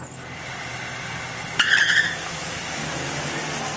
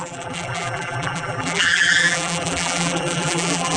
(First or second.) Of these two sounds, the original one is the first